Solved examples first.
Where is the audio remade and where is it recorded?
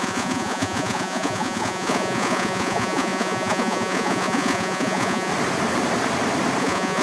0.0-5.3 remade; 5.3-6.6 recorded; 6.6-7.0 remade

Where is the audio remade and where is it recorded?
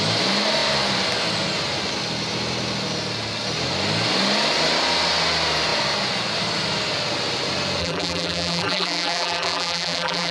0.0-7.8 recorded; 7.8-10.3 remade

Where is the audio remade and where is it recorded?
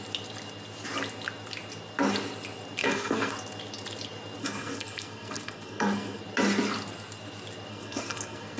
0.0-2.8 recorded; 2.8-3.3 remade; 3.3-4.4 recorded; 4.4-6.2 remade; 6.2-7.7 recorded; 7.7-8.6 remade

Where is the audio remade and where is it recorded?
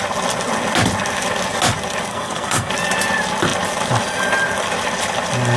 0.0-2.1 recorded; 2.1-2.7 remade; 2.7-5.6 recorded